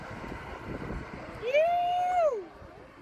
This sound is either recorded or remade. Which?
recorded